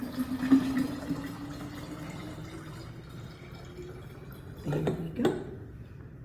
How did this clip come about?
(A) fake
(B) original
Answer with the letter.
B